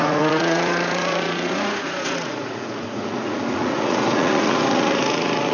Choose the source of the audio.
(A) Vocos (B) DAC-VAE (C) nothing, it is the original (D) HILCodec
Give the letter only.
A